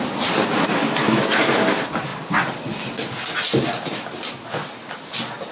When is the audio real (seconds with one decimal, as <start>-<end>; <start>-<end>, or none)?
0.0-0.8; 1.4-5.5